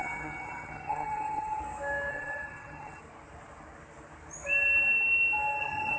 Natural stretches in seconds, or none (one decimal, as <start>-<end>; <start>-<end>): 1.6-2.1; 3.0-5.6